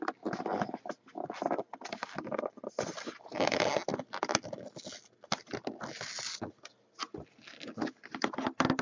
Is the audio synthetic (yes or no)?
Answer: no